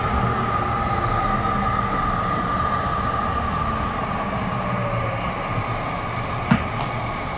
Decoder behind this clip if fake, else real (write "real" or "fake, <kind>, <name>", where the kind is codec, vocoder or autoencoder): real